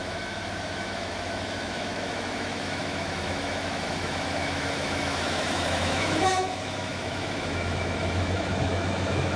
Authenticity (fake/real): fake